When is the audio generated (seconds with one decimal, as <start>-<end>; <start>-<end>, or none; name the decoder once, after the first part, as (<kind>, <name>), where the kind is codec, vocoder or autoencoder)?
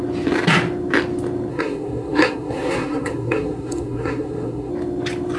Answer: 1.5-4.7 (codec, SNAC)